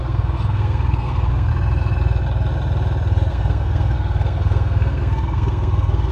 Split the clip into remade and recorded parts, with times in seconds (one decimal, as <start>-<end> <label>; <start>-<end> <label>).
0.0-1.5 remade; 1.5-3.3 recorded; 3.3-6.1 remade